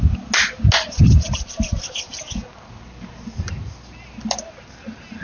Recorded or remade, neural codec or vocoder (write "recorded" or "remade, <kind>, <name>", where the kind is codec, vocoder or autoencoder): recorded